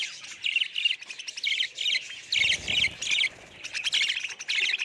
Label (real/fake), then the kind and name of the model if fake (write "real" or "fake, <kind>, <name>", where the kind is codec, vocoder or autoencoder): real